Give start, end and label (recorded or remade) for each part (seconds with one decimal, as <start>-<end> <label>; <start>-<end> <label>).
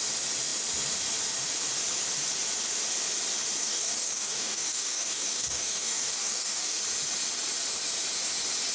0.0-3.6 recorded; 3.6-6.8 remade; 6.8-8.7 recorded